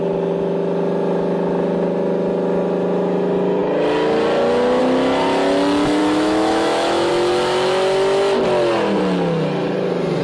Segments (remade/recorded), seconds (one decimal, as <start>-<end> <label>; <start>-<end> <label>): 0.0-6.0 recorded; 6.0-7.1 remade; 7.1-10.2 recorded